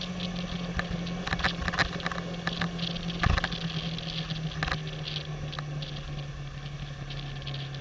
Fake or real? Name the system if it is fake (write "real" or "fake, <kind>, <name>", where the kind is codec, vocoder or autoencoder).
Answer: real